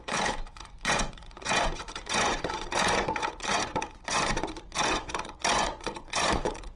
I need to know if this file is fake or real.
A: fake